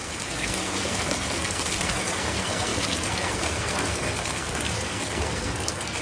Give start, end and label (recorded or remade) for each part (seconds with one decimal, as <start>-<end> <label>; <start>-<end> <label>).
0.0-6.0 remade